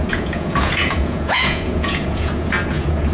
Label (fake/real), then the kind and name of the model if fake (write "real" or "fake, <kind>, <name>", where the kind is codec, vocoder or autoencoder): fake, vocoder, Vocos